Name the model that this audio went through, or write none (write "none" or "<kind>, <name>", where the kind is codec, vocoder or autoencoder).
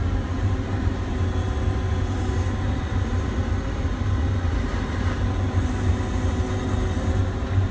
none